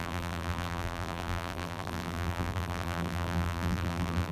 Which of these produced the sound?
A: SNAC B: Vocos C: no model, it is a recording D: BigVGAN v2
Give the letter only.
D